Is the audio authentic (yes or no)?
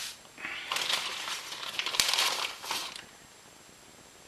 yes